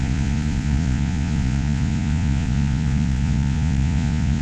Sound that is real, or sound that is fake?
fake